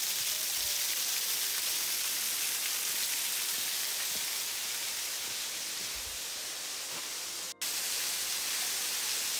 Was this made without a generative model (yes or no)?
yes